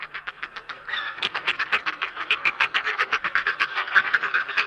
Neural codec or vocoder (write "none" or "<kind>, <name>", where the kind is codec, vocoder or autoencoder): codec, SNAC